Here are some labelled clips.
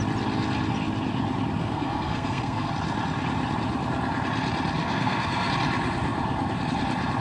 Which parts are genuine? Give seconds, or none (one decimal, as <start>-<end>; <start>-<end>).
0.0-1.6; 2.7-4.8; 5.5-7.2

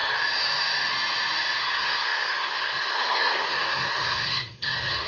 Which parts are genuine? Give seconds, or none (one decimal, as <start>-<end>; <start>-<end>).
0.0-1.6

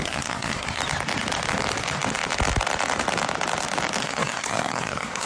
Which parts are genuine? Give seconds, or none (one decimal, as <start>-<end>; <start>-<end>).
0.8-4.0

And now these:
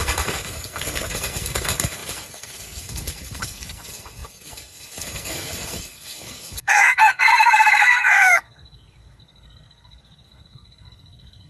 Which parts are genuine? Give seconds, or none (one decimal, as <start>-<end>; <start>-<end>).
none